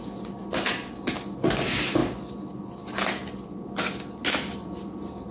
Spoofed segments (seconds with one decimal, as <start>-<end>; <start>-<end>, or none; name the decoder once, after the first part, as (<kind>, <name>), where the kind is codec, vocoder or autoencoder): none